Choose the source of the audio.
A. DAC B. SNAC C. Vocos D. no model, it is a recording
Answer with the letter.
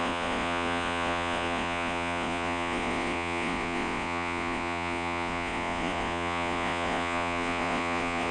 C